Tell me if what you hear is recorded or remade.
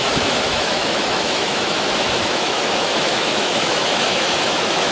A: remade